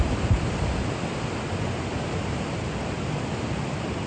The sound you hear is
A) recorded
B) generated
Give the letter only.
A